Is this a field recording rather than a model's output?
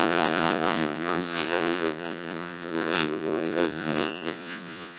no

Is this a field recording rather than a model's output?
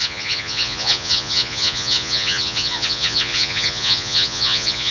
no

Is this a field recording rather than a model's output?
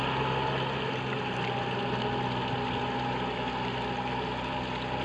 yes